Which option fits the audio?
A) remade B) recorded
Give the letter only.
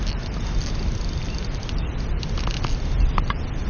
B